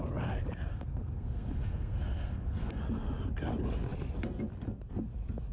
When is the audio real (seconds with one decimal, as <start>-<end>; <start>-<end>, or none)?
0.0-0.7; 2.8-5.5